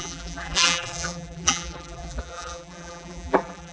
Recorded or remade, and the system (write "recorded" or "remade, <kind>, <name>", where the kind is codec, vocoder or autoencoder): remade, vocoder, BigVGAN v2